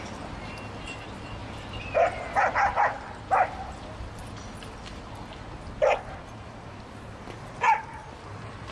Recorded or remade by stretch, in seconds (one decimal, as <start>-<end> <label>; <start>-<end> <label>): 0.0-1.4 recorded; 1.4-2.8 remade; 2.8-8.7 recorded